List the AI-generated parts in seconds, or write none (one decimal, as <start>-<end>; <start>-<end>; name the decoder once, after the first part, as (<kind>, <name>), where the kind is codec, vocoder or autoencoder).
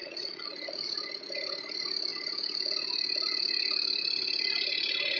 0.0-0.9 (vocoder, Vocos)